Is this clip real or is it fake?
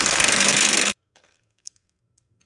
fake